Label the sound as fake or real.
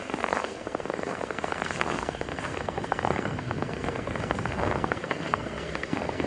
fake